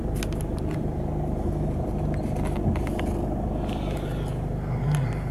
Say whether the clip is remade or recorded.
recorded